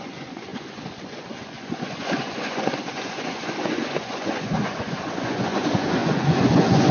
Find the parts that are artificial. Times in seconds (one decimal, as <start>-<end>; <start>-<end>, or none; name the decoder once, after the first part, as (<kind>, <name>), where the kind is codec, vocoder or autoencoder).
0.0-6.9 (vocoder, Vocos)